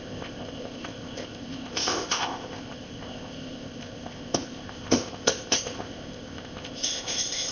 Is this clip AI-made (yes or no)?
yes